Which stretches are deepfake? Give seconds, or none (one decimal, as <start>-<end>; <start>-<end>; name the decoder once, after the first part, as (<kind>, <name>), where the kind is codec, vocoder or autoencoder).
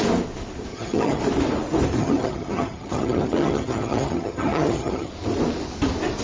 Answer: 0.7-1.2 (vocoder, HiFi-GAN); 2.0-5.1